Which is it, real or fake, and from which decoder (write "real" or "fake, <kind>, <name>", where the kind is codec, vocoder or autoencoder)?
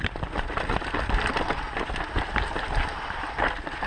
real